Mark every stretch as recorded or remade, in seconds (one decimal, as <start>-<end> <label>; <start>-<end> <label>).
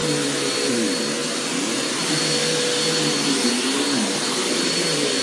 0.0-5.2 recorded